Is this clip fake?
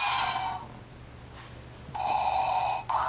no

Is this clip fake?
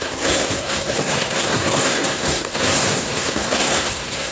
yes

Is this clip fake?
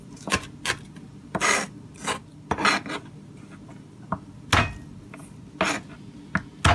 no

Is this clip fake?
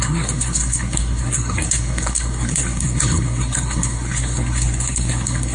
yes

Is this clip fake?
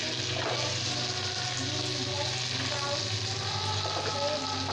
no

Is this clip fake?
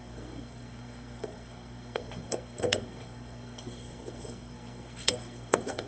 yes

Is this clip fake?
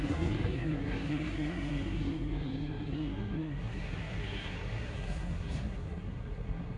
yes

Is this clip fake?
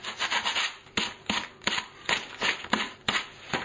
no